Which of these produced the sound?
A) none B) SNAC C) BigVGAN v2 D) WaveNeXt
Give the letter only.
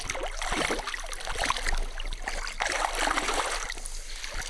A